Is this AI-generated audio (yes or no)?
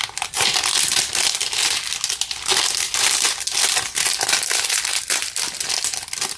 no